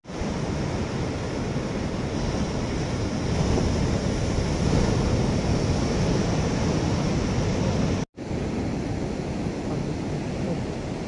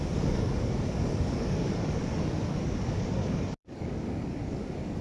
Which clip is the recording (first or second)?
first